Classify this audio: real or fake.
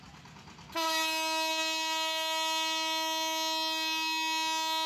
real